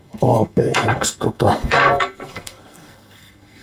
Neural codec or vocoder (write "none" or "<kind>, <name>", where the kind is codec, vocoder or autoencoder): codec, SNAC